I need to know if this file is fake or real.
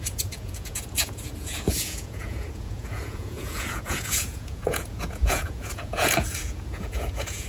fake